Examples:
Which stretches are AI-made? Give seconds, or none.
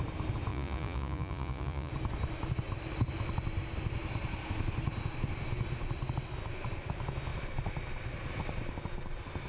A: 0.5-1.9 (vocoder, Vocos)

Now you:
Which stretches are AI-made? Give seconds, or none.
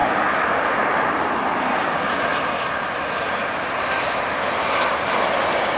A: none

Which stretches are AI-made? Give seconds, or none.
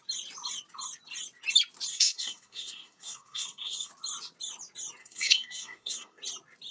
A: 1.9-3.9 (codec, SNAC); 5.0-6.2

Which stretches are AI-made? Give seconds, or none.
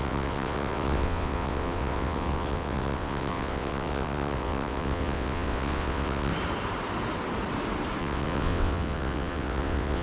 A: 0.0-6.3 (vocoder, WaveNeXt); 8.0-10.0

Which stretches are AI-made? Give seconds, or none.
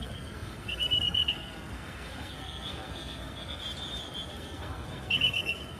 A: 0.0-3.6 (codec, SNAC); 4.3-5.8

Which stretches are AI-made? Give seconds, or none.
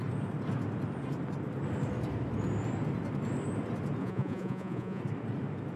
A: 4.0-5.0 (vocoder, Vocos)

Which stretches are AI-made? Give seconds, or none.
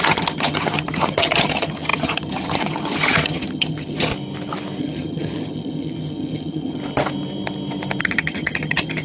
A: 0.0-4.1 (vocoder, HiFi-GAN); 4.8-6.8; 8.0-9.0